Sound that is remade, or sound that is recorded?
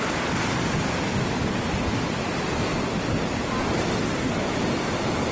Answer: recorded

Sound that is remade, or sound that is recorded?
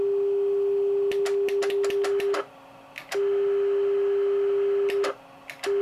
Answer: recorded